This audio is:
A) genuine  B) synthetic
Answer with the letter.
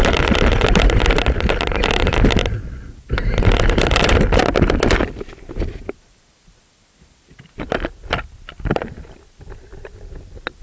A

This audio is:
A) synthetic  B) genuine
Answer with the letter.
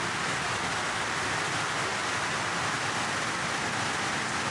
B